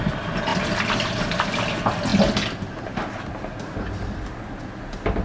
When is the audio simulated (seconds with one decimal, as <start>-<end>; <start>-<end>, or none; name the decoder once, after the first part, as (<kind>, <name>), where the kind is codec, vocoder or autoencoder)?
none